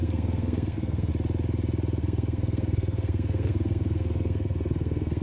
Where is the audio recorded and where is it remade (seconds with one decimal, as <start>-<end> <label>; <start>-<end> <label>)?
0.0-1.1 remade; 1.1-2.0 recorded; 2.0-5.2 remade